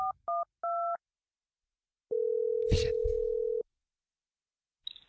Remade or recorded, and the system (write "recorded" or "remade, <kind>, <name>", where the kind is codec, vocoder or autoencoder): recorded